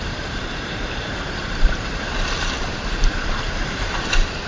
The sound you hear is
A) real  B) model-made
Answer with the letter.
B